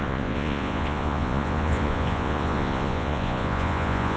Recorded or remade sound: remade